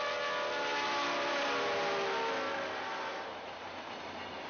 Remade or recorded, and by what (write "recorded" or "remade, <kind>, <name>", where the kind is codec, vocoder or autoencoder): recorded